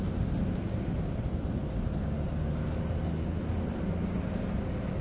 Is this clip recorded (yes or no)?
yes